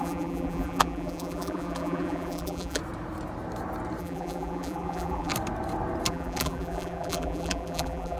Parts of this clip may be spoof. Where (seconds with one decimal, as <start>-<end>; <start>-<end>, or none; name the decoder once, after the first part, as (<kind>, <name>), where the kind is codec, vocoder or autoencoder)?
0.0-2.8 (vocoder, BigVGAN v2); 4.0-5.3; 6.1-8.2